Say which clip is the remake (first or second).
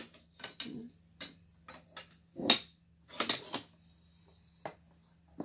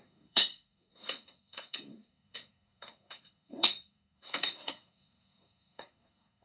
second